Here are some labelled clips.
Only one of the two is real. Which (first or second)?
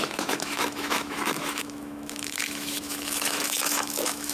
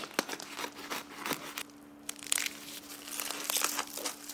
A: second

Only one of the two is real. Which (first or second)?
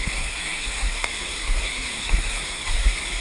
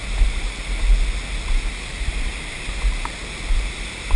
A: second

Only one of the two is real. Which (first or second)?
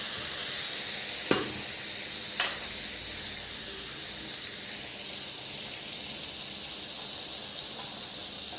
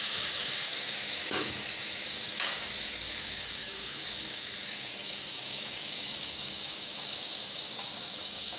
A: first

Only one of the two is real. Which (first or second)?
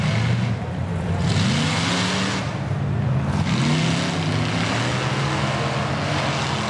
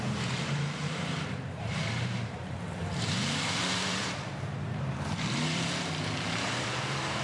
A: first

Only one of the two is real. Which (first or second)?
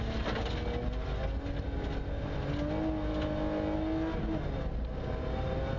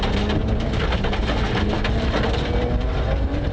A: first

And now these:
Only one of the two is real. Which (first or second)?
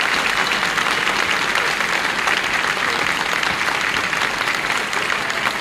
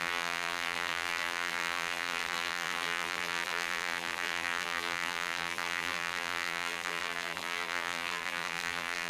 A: first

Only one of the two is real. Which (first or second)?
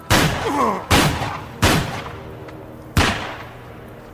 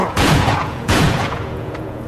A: first